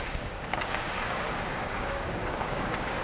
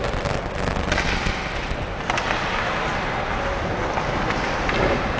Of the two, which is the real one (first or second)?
second